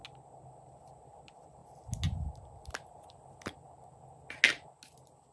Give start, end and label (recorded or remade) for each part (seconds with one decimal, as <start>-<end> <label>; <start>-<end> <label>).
0.0-5.3 recorded